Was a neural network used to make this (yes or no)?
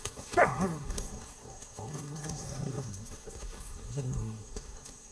yes